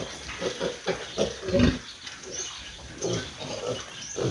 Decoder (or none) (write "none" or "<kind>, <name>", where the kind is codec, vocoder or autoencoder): none